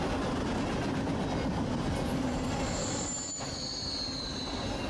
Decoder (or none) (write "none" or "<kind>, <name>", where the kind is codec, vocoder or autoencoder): none